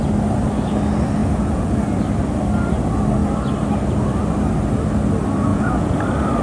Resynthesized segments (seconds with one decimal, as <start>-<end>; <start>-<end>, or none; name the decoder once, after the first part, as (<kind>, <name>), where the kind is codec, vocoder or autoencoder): 1.2-1.8 (vocoder, Vocos); 5.5-6.0